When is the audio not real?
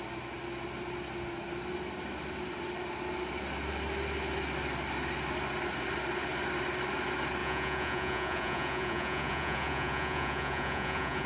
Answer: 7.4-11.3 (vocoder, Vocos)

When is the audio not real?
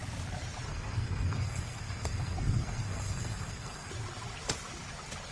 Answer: 0.7-3.9 (codec, SNAC)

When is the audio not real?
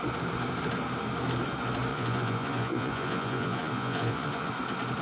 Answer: 1.9-4.5 (vocoder, Vocos)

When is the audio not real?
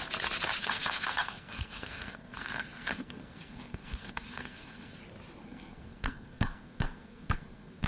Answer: 0.6-5.0 (codec, SNAC); 5.4-7.9